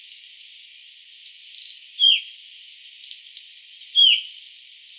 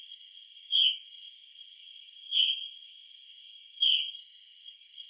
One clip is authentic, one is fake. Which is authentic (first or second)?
first